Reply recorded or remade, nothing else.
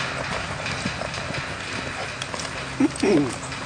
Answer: recorded